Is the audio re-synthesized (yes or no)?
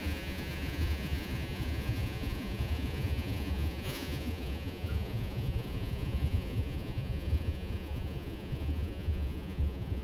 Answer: yes